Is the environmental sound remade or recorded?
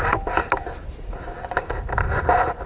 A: recorded